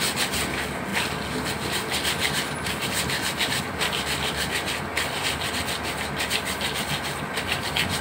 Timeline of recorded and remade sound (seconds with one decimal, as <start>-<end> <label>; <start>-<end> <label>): 0.0-8.0 recorded